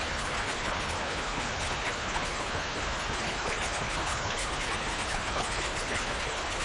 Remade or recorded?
remade